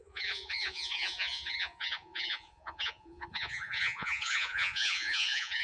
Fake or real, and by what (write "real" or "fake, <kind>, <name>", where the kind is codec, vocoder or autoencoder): fake, vocoder, Vocos